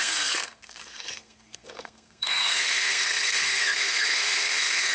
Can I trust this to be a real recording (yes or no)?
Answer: no